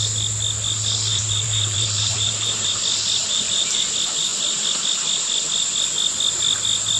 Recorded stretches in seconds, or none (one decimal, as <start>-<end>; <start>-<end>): 0.0-1.1; 2.7-3.2; 3.8-7.0

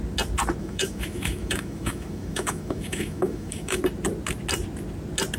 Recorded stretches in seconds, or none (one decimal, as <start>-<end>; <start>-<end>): 0.0-0.6; 3.8-5.4

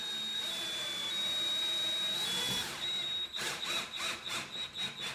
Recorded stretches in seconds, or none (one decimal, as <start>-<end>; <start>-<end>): 0.0-1.0; 1.6-5.1

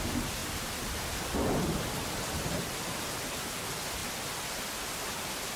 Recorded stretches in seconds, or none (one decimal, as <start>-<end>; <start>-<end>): 0.0-5.6